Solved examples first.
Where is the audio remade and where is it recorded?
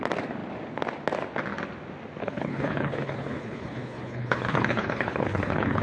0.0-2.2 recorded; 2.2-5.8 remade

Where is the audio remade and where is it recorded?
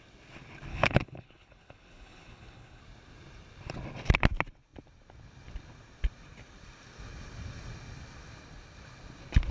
0.0-0.7 recorded; 0.7-2.8 remade; 2.8-9.5 recorded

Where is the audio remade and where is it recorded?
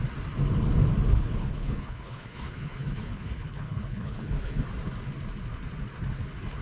0.0-1.1 recorded; 1.1-4.6 remade; 4.6-6.6 recorded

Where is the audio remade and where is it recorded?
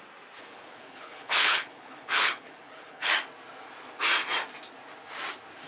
0.0-0.4 recorded; 0.4-3.1 remade; 3.1-5.7 recorded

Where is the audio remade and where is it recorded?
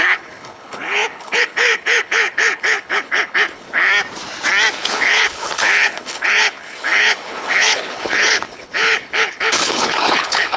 0.0-3.9 remade; 3.9-4.7 recorded; 4.7-10.6 remade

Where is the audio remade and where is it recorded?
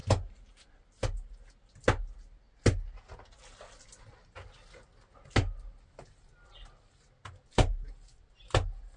0.0-9.0 recorded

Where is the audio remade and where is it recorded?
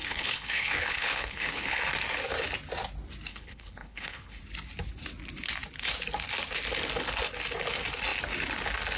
0.0-1.8 remade; 1.8-3.3 recorded; 3.3-4.4 remade; 4.4-9.0 recorded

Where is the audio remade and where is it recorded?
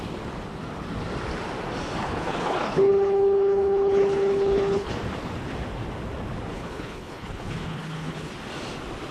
0.0-2.0 recorded; 2.0-4.9 remade; 4.9-6.5 recorded; 6.5-8.3 remade; 8.3-9.1 recorded